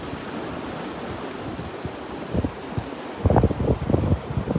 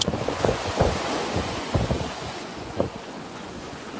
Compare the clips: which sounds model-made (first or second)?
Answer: second